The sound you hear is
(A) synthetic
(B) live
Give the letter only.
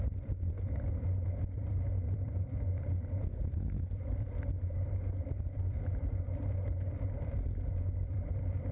A